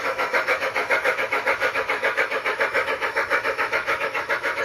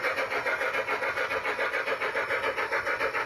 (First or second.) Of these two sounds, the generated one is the first